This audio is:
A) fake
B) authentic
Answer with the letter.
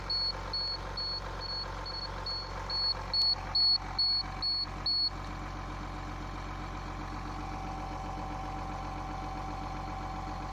B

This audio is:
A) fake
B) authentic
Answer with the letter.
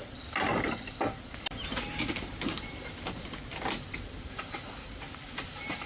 B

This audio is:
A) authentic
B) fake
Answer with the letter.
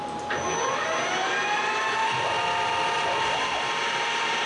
A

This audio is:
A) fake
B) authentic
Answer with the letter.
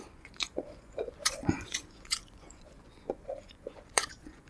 A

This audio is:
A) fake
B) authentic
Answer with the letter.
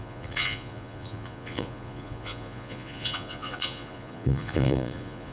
A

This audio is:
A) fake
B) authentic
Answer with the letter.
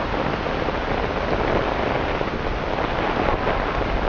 B